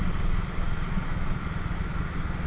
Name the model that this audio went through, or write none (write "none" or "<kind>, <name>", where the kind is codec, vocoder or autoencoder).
none